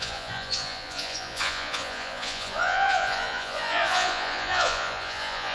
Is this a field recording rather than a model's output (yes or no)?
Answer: no